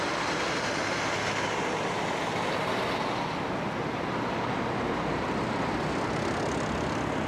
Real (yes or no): yes